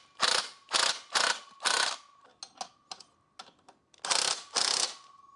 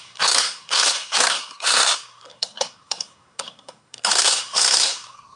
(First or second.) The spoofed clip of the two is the second